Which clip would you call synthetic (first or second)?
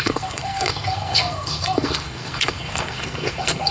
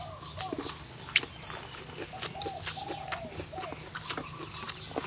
first